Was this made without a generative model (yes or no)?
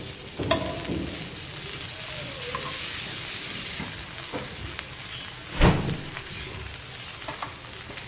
yes